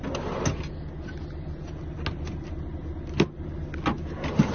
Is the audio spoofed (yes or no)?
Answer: no